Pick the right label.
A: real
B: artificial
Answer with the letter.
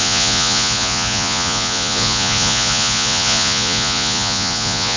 B